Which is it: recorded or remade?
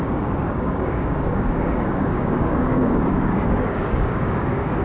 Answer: remade